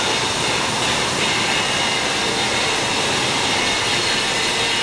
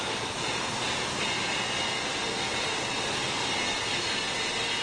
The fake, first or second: first